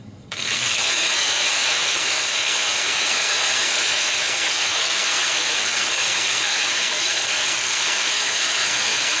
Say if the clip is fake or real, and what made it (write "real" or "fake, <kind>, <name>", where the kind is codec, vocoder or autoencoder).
fake, codec, SNAC